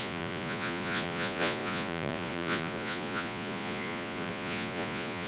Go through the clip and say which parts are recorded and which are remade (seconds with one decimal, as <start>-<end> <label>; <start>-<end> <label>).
0.0-5.3 remade